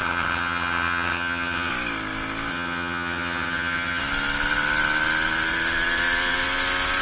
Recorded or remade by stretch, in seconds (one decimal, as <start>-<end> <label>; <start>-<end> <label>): 0.0-1.7 remade; 1.7-2.5 recorded; 2.5-4.0 remade; 4.0-7.0 recorded